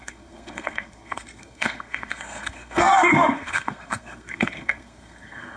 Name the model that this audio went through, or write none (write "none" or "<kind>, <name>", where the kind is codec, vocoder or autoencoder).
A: codec, SNAC